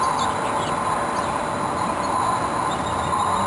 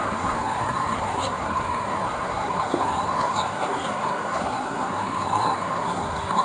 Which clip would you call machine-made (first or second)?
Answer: second